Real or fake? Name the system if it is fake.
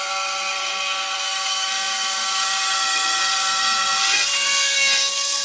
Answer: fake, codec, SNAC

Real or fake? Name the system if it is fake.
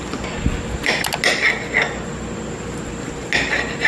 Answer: real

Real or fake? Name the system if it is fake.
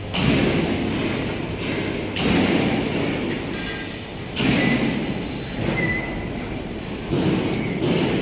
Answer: real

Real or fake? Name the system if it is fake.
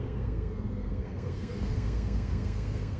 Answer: fake, codec, SNAC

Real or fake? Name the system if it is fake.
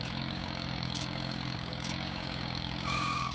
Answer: fake, codec, DAC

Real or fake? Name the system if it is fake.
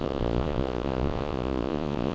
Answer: fake, vocoder, Vocos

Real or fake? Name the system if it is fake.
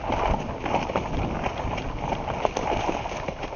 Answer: real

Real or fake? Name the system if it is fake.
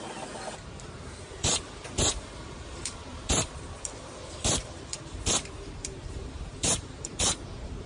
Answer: fake, vocoder, BigVGAN v2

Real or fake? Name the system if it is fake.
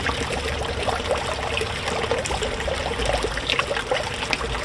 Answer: real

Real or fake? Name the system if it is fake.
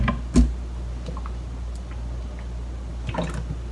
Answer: real